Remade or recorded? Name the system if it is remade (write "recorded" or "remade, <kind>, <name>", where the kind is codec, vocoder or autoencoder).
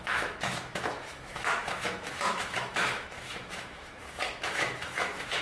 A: remade, autoencoder, DAC-VAE